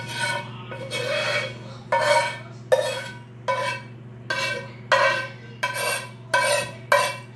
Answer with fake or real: real